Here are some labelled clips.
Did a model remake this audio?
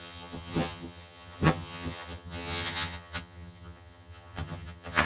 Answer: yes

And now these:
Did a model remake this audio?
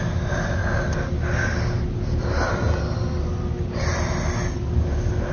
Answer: no